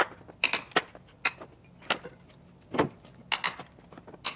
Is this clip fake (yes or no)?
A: no